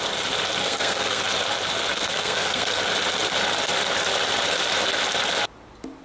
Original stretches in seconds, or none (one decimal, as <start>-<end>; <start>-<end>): 0.0-0.6; 1.2-2.0; 2.8-6.0